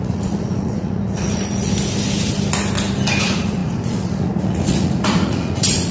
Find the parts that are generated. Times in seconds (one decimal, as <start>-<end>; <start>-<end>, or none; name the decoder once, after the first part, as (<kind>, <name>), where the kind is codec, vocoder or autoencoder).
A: 0.0-1.7 (vocoder, Vocos); 3.2-5.9